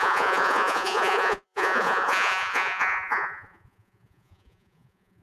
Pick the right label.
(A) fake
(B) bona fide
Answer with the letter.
A